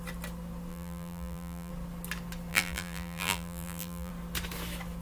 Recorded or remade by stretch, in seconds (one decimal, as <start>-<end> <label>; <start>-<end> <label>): 0.0-0.7 recorded; 0.7-1.7 remade; 1.7-2.5 recorded; 2.5-4.1 remade; 4.1-5.0 recorded